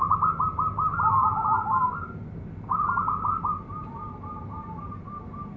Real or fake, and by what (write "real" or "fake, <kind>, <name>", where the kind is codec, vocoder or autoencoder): real